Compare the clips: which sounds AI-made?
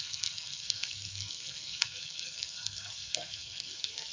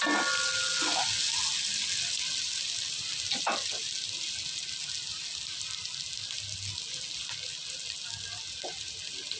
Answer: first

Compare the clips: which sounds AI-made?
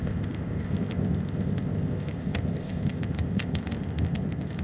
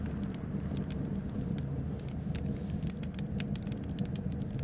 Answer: first